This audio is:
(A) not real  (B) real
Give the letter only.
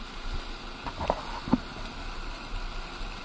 B